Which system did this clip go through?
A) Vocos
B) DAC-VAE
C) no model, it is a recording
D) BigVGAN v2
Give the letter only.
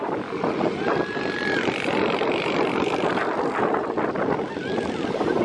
C